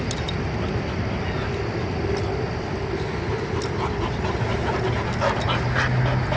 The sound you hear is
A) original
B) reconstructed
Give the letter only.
A